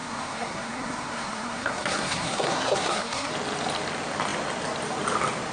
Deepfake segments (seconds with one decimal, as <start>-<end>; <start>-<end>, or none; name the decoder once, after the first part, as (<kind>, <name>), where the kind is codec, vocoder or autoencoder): 0.0-3.3 (codec, SNAC)